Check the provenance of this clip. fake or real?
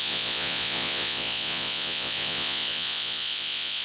fake